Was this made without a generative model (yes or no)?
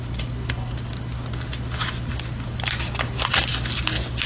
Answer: yes